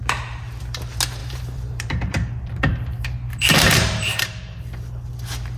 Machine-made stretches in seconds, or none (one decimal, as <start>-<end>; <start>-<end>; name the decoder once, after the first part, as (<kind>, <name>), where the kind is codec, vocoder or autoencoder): 0.0-0.6 (vocoder, BigVGAN v2); 1.2-4.6